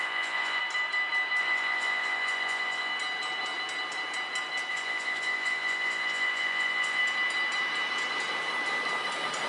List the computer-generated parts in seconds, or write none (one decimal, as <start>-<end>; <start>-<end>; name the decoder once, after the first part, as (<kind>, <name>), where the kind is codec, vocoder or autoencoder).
0.0-0.6 (vocoder, Vocos); 1.4-2.9; 4.7-7.0